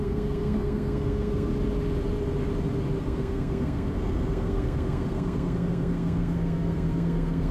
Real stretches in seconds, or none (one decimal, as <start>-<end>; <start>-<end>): 1.5-3.0